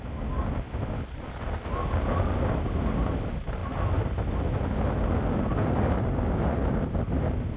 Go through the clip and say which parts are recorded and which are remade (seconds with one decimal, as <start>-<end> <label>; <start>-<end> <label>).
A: 0.0-7.6 recorded